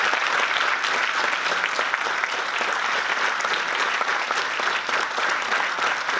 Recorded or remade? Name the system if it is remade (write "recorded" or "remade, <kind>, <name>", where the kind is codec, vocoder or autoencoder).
remade, vocoder, BigVGAN v2